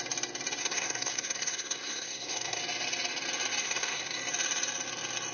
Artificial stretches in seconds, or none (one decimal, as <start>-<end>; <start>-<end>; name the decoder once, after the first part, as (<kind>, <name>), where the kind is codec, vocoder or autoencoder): 0.6-2.6 (codec, SNAC); 3.6-4.1